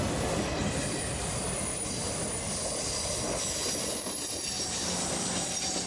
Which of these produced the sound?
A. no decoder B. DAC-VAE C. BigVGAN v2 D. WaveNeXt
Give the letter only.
A